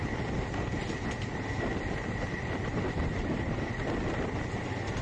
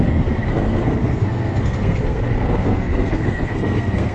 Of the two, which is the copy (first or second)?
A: second